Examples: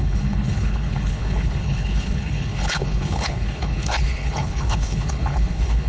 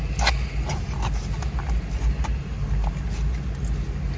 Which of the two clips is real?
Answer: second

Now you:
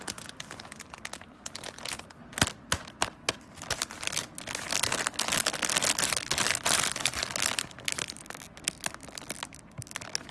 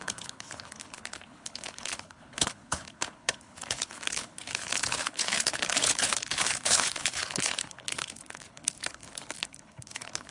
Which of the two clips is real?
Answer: first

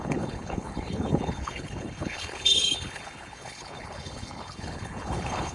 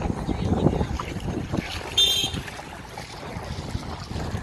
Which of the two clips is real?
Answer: second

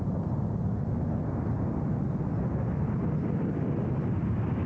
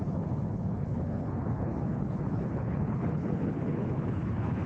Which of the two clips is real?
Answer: first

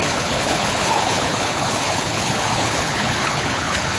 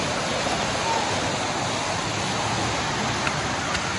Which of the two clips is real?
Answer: second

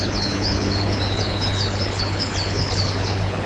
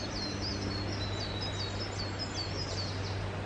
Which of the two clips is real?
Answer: second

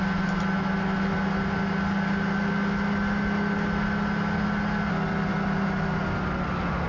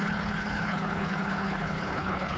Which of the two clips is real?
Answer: first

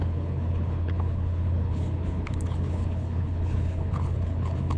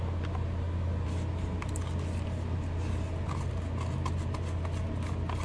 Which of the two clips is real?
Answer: second